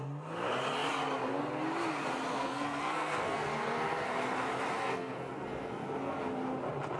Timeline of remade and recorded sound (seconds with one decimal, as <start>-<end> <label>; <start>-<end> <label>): 0.0-2.3 recorded; 2.3-4.1 remade; 4.1-4.8 recorded; 4.8-6.2 remade; 6.2-7.0 recorded